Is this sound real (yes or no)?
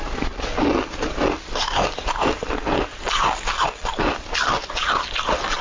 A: yes